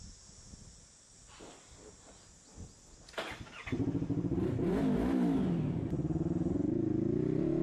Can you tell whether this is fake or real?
real